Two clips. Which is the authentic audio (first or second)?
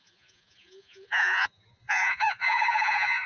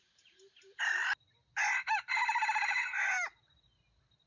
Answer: second